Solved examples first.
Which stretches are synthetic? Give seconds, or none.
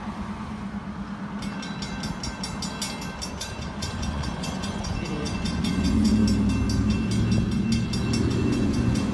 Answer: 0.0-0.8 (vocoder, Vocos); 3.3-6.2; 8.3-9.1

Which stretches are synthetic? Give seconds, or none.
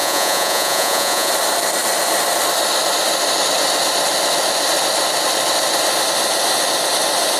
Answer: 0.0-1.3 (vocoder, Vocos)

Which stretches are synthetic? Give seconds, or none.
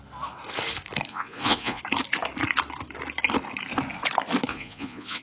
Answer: 1.1-1.8 (vocoder, Vocos); 4.5-5.2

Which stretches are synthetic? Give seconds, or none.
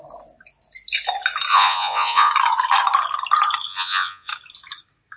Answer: 1.5-2.3 (vocoder, Vocos); 3.7-4.3